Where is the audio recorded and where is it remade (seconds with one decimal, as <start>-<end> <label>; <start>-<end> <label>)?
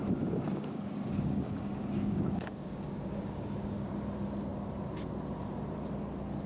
0.0-3.9 remade; 3.9-6.5 recorded